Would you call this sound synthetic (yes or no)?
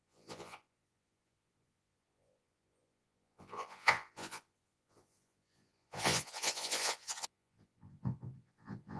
yes